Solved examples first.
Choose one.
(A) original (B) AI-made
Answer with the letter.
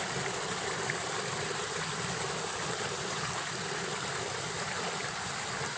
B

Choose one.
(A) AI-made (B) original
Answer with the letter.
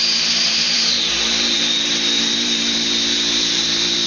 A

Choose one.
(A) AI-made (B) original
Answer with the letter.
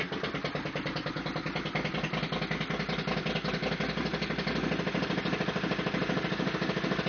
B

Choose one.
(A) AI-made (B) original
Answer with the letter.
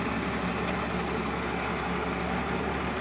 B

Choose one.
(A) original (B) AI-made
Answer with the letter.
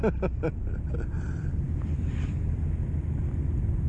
A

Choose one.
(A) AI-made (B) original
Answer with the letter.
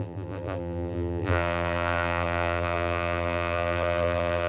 A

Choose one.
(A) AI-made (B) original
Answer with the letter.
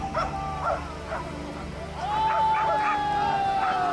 A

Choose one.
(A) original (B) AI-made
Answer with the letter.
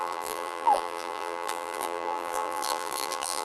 B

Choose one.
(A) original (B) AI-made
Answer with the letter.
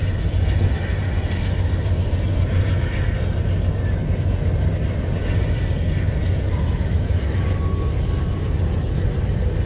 A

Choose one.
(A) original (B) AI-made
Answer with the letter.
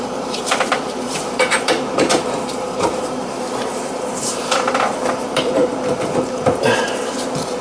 B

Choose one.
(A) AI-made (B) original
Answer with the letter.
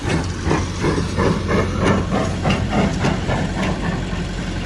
B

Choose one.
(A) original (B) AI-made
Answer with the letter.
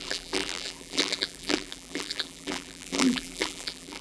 B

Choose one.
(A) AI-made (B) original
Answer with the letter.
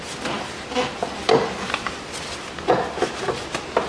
B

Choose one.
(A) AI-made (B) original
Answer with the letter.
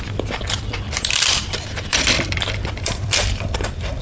A